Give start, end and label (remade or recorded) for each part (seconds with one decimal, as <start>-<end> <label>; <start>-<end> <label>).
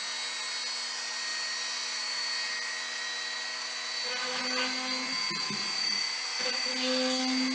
0.0-7.5 recorded